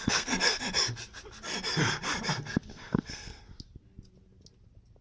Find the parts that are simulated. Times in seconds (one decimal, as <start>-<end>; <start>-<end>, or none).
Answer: 0.0-0.6; 2.7-3.4